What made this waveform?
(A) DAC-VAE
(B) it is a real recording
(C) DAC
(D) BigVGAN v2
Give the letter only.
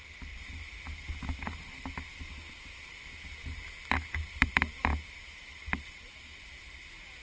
B